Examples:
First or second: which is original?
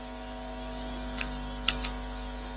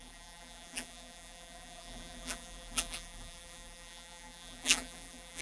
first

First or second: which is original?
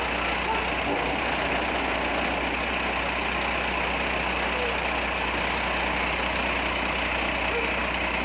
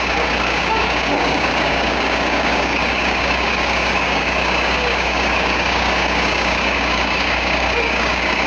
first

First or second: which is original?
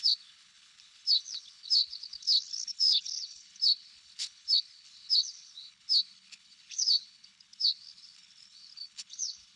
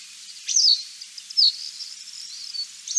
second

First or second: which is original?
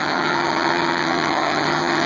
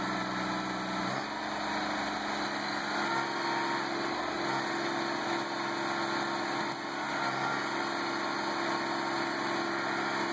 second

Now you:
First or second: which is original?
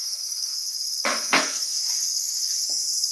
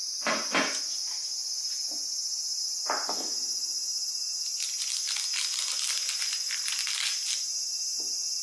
second